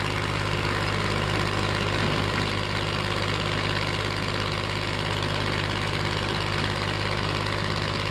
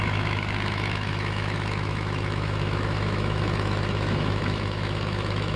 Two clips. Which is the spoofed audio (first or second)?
second